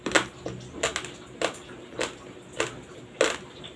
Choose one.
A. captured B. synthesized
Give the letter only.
A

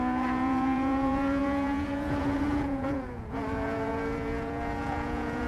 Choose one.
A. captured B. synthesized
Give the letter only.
B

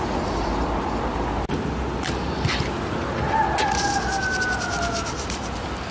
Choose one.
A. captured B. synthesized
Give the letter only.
A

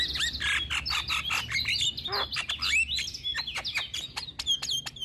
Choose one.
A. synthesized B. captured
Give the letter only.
B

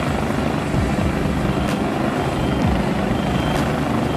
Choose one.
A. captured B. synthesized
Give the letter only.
A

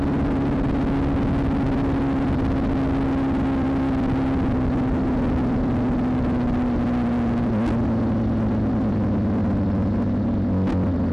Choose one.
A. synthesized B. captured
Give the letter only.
B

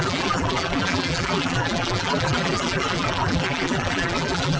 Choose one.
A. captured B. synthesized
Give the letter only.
B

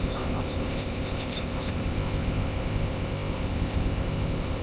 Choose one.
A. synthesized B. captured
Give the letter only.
A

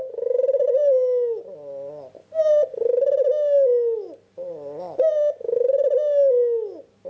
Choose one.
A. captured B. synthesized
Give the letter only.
A